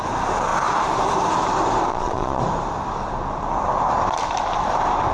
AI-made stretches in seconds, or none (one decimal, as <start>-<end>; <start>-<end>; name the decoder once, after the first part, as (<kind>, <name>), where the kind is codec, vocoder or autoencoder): 1.9-2.4 (vocoder, Vocos)